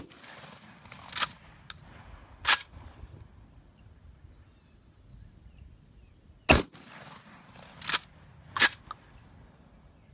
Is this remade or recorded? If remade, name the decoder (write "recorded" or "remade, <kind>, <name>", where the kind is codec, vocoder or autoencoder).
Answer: recorded